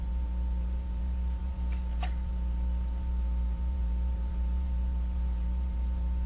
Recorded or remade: remade